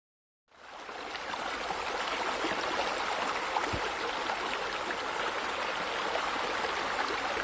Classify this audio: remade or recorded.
recorded